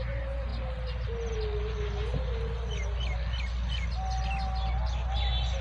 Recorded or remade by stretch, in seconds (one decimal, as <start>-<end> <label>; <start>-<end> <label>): 0.0-5.6 recorded